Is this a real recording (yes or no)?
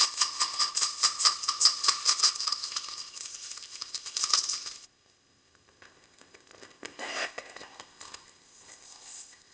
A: no